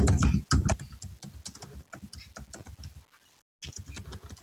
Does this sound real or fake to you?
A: real